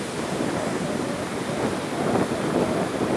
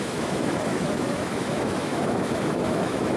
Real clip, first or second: first